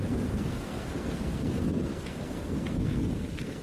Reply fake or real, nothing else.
fake